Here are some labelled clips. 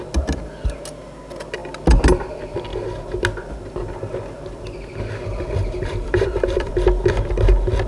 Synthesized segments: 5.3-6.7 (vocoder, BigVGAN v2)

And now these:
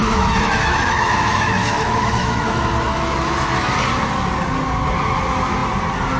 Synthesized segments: 0.0-3.7 (autoencoder, DAC-VAE)

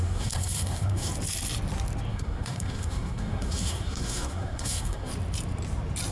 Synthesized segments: 0.0-1.1 (codec, SNAC); 2.1-5.1

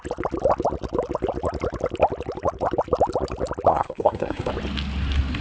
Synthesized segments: 3.7-4.5 (codec, SNAC)

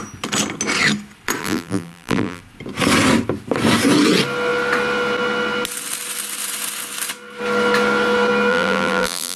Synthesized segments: 1.4-2.4 (vocoder, BigVGAN v2); 8.5-9.4

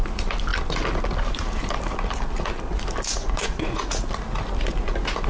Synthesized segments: 3.2-4.0 (vocoder, Vocos)

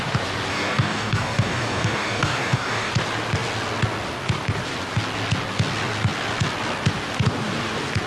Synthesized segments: 0.5-2.9 (codec, DAC)

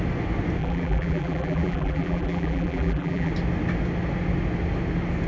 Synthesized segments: 0.6-3.3 (vocoder, BigVGAN v2)